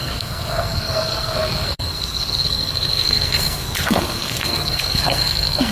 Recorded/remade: remade